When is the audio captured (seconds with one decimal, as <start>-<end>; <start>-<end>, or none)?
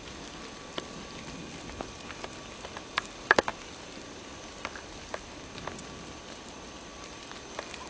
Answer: 0.0-3.5; 7.0-7.9